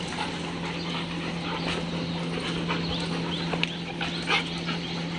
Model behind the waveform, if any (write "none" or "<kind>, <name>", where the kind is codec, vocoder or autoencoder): none